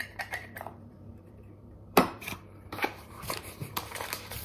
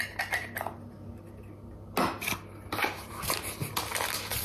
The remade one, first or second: first